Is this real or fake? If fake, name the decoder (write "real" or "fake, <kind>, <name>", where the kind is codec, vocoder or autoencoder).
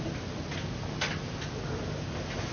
real